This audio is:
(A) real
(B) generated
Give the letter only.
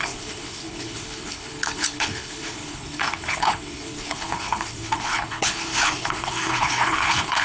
B